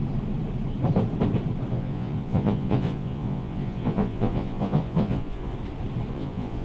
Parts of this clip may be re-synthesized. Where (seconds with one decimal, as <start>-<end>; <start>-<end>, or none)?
1.7-5.5; 6.1-6.6